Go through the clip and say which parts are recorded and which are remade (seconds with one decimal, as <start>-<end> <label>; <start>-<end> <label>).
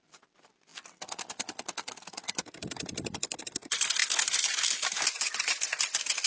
0.0-6.3 recorded